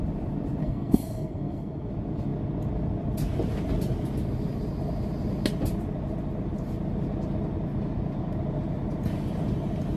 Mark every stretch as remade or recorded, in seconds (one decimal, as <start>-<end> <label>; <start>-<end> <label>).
0.0-0.6 recorded; 0.6-1.9 remade; 1.9-10.0 recorded